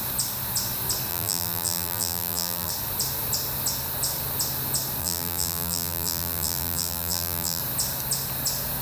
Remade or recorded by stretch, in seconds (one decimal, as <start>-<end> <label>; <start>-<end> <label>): 0.0-1.1 recorded; 1.1-2.7 remade; 2.7-5.0 recorded; 5.0-7.6 remade; 7.6-8.8 recorded